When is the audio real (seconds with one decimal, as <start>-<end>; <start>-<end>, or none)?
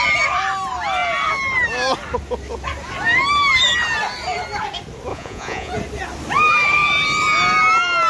0.0-5.1; 5.7-8.1